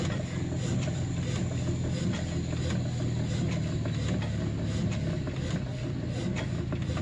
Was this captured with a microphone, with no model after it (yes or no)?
yes